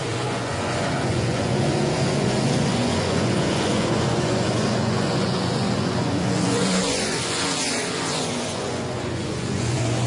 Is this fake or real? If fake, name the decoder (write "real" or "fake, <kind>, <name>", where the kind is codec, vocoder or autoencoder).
fake, vocoder, Vocos